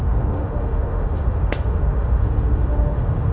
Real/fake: fake